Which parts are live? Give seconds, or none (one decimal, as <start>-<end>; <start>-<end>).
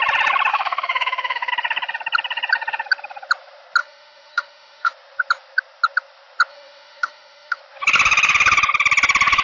0.0-0.5; 1.5-3.8; 4.9-6.5; 7.6-9.4